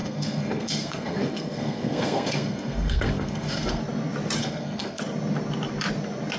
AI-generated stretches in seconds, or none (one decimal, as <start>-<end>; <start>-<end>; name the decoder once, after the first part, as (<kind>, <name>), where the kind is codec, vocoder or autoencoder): 0.0-3.8 (codec, SNAC); 4.4-5.0